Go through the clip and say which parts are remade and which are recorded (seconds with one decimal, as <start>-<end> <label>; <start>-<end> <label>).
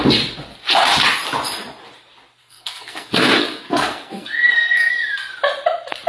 0.0-2.4 recorded; 2.4-4.9 remade; 4.9-6.1 recorded